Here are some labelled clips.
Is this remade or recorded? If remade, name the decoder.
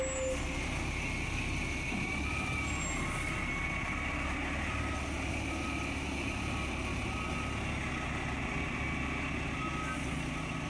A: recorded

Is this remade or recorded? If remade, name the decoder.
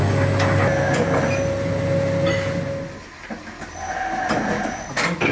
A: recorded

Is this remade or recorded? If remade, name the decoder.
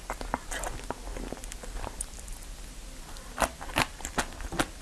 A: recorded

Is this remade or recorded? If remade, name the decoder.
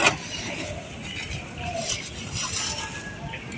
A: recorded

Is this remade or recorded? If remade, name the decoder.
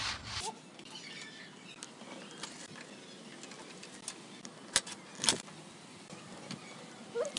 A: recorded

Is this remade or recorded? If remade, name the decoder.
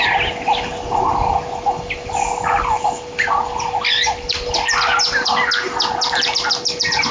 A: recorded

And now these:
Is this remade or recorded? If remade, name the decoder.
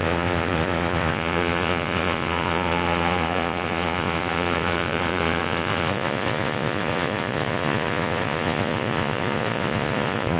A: remade, vocoder, Vocos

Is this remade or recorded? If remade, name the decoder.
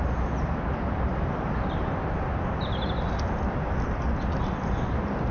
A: recorded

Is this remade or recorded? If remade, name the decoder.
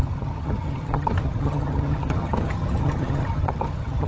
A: remade, vocoder, HiFi-GAN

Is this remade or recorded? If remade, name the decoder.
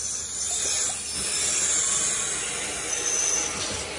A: recorded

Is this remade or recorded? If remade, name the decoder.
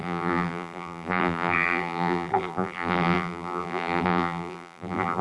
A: remade, vocoder, BigVGAN v2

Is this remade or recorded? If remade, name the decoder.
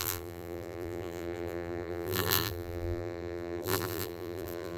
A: remade, vocoder, BigVGAN v2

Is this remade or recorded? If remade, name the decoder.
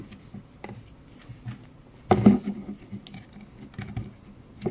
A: recorded